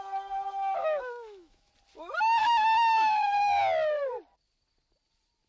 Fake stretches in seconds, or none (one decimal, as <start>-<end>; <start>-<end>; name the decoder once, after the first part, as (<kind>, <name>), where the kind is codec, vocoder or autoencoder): 0.8-1.7 (autoencoder, DAC-VAE); 2.4-3.6